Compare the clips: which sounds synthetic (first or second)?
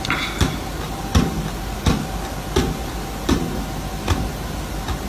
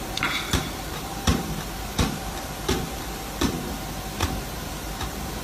second